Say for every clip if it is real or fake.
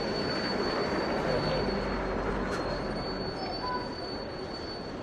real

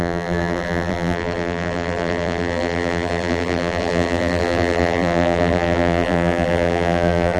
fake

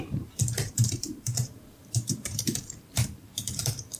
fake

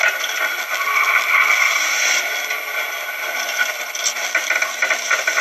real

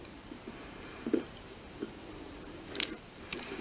fake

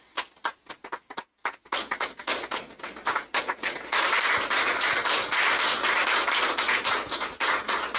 real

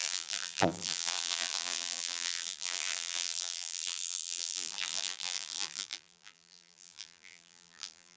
fake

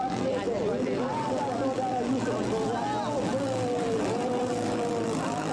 fake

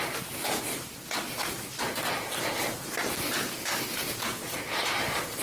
fake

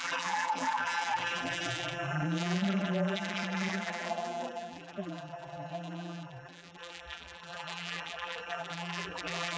fake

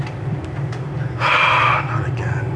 fake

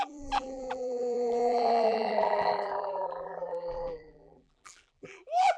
fake